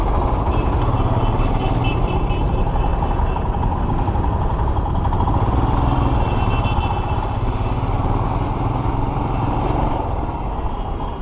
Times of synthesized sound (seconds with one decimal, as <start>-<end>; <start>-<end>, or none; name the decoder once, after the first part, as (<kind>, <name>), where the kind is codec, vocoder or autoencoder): none